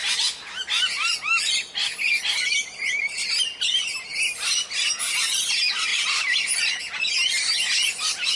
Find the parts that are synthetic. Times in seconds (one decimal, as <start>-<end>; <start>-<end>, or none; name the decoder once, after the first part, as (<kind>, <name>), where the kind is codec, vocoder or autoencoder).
4.1-4.9 (vocoder, BigVGAN v2); 5.9-6.8